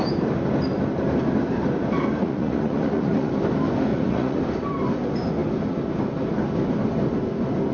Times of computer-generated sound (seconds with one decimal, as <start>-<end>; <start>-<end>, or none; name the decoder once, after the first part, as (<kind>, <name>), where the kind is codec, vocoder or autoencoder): 2.2-3.3 (vocoder, Vocos); 3.9-4.4